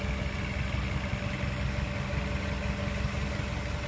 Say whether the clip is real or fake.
real